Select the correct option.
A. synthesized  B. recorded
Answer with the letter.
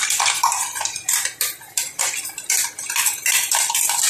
B